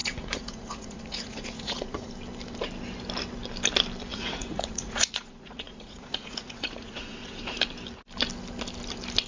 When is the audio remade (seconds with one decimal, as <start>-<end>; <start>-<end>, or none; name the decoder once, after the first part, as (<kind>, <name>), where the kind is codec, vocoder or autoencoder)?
0.0-2.1 (vocoder, Vocos); 4.1-7.4